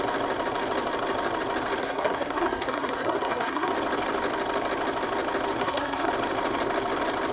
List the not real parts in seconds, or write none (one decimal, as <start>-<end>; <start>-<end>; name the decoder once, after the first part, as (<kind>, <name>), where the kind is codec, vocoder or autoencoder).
1.8-3.7 (codec, SNAC); 5.6-6.1